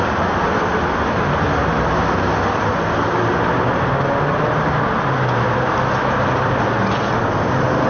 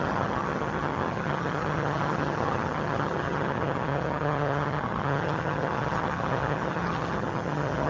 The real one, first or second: first